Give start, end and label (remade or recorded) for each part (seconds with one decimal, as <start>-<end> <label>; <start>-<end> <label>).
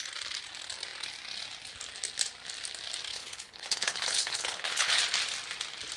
0.0-3.1 recorded; 3.1-5.0 remade; 5.0-6.0 recorded